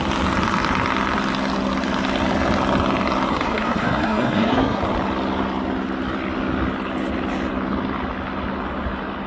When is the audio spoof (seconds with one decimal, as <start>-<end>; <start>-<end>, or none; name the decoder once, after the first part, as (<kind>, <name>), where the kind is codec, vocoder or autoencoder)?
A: 3.3-4.8 (codec, SNAC)